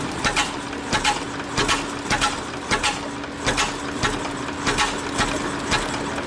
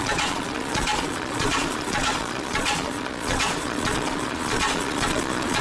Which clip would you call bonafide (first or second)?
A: first